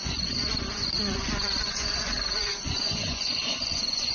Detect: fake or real fake